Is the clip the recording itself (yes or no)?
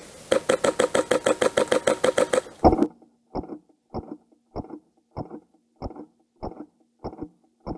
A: yes